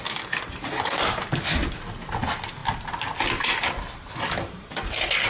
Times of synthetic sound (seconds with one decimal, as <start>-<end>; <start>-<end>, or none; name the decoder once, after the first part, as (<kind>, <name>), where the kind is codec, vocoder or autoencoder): none